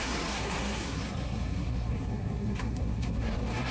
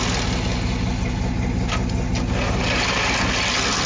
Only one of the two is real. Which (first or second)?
second